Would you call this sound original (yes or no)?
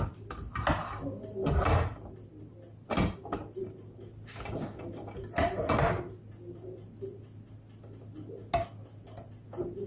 yes